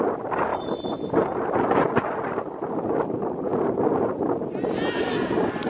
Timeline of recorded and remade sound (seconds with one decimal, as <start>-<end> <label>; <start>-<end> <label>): 0.0-0.5 remade; 0.5-2.7 recorded; 2.7-3.5 remade; 3.5-5.1 recorded; 5.1-5.7 remade